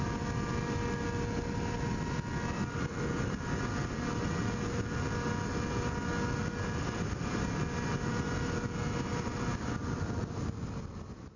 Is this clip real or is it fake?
real